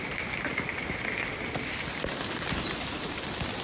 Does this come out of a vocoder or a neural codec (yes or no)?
no